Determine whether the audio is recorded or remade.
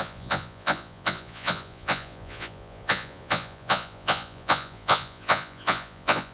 remade